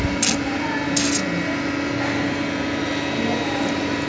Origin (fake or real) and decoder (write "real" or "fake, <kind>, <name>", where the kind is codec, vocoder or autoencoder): real